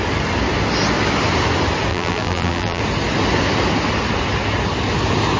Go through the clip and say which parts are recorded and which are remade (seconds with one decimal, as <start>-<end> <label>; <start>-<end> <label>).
0.0-1.9 recorded; 1.9-2.8 remade; 2.8-5.4 recorded